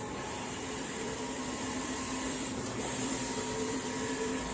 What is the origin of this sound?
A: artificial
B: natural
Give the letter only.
A